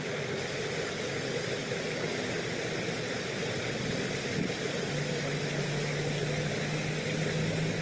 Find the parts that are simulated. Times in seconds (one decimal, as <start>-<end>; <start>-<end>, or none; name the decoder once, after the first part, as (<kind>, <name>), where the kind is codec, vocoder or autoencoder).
0.6-7.8 (vocoder, BigVGAN v2)